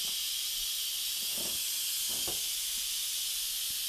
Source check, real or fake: real